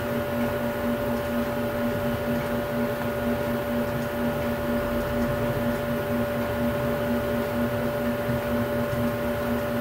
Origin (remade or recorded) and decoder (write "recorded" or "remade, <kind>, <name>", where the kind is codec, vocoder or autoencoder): recorded